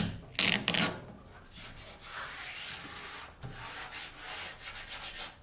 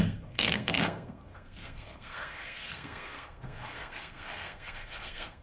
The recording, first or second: first